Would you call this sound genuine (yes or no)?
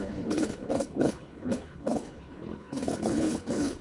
no